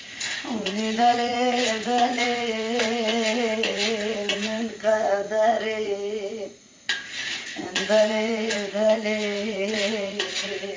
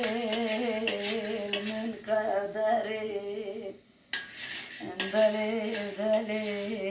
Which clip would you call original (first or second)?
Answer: second